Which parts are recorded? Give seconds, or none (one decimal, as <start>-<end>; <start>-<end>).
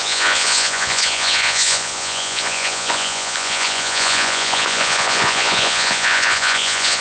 none